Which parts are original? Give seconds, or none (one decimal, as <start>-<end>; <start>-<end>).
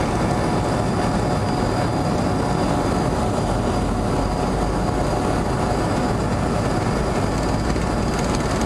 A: 0.0-8.7